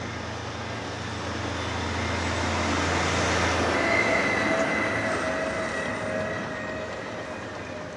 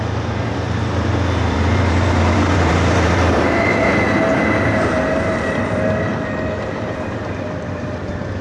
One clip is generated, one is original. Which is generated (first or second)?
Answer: second